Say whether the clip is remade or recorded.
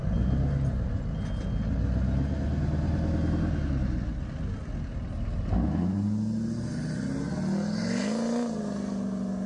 recorded